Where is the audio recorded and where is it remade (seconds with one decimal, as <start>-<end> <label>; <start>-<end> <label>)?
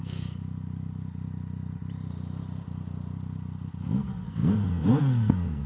0.0-0.4 remade; 0.4-3.8 recorded; 3.8-5.7 remade